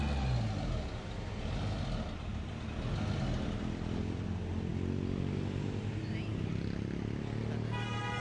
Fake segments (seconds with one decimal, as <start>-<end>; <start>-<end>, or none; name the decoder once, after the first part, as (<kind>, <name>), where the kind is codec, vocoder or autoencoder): none